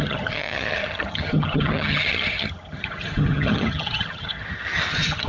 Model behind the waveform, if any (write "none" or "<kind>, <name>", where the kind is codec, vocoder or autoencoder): vocoder, HiFi-GAN